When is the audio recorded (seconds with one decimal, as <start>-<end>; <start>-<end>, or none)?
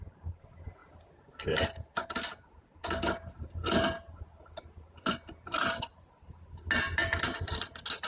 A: 5.9-8.1